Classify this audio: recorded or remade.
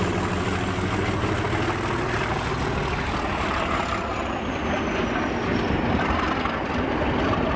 recorded